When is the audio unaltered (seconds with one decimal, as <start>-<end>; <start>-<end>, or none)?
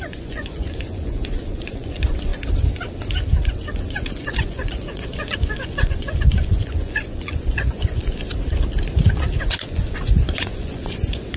2.3-3.7; 8.3-9.4